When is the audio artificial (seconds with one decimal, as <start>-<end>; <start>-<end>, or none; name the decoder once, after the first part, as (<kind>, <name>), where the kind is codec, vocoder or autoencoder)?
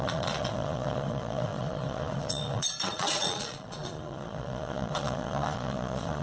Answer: 0.0-6.2 (vocoder, Vocos)